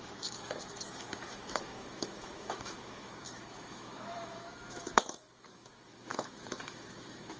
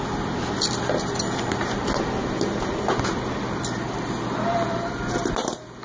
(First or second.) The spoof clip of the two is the first